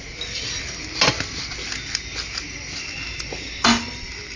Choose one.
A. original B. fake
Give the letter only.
A